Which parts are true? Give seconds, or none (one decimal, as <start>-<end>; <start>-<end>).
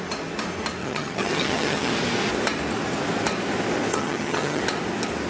0.0-0.8; 1.9-3.9; 4.6-5.3